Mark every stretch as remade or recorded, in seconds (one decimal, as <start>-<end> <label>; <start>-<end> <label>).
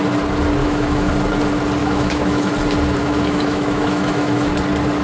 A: 0.0-0.6 recorded; 0.6-1.1 remade; 1.1-1.8 recorded; 1.8-2.5 remade; 2.5-3.0 recorded; 3.0-4.5 remade; 4.5-5.0 recorded